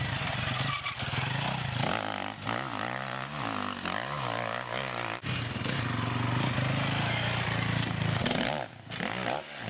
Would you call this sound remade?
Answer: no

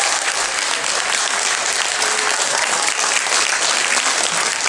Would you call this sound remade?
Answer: no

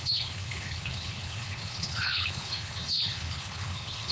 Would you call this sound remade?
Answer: yes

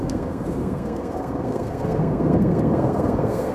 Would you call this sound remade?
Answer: yes